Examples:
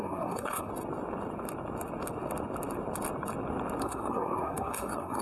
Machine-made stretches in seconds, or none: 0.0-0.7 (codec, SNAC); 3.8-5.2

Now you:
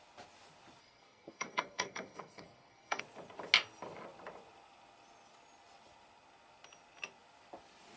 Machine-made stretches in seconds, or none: 0.8-3.0 (codec, SNAC)